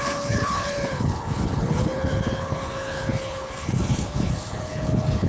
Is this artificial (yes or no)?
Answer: yes